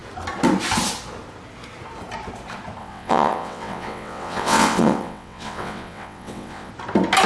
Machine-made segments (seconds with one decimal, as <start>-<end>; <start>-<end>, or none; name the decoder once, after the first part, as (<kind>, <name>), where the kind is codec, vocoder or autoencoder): 2.8-6.7 (vocoder, WaveNeXt)